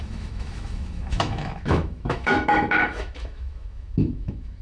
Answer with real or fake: fake